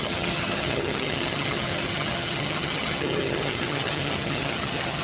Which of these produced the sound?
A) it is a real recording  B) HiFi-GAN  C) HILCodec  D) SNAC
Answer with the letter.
B